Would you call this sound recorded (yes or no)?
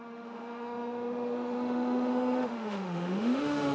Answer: no